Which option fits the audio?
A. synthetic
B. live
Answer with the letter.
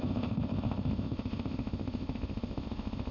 A